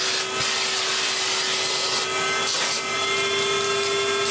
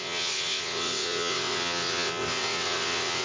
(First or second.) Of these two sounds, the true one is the first